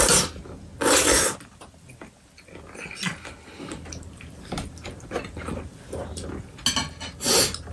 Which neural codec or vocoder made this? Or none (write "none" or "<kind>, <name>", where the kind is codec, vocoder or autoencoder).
none